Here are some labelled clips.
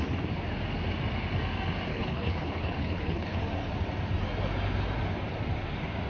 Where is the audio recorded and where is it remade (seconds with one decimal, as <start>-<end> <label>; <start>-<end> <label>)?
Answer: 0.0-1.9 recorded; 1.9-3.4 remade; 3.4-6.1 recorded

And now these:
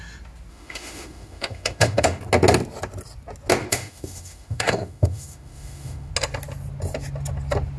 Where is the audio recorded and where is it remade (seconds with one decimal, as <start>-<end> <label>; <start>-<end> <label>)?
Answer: 0.0-0.5 recorded; 0.5-2.2 remade; 2.2-3.7 recorded; 3.7-6.1 remade; 6.1-7.8 recorded

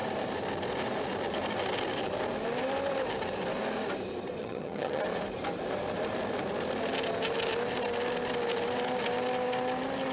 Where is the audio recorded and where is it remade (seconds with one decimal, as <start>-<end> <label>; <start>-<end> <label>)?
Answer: 0.0-4.4 recorded; 4.4-5.0 remade; 5.0-10.1 recorded